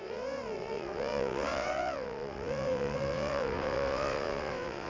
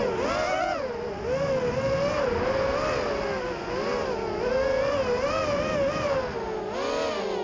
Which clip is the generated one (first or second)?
first